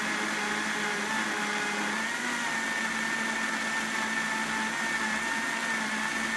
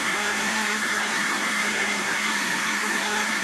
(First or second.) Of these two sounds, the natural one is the first